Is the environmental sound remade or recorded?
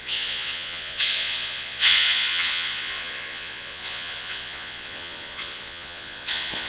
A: remade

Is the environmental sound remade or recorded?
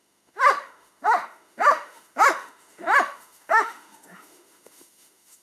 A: remade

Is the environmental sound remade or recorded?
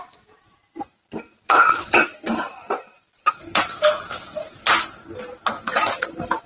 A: recorded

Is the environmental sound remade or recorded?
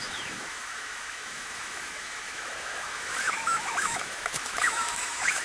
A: remade